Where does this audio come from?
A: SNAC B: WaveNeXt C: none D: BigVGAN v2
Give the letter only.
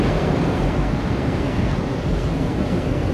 A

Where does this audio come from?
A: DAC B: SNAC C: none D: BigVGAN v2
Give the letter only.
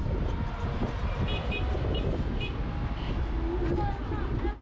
C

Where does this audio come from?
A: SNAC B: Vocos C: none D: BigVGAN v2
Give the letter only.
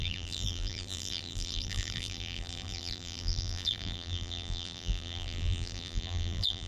D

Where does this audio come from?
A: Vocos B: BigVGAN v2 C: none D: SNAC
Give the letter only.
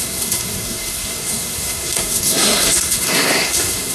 D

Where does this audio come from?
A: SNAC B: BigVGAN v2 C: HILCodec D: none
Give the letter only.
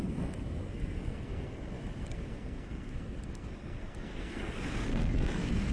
A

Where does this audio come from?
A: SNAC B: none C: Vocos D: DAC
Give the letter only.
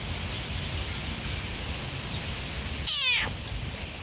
B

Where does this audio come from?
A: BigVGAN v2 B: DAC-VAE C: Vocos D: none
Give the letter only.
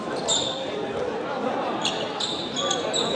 D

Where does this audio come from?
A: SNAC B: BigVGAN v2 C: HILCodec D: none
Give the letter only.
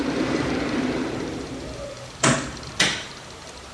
B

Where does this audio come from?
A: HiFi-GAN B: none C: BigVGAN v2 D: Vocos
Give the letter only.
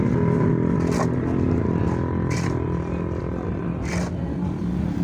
B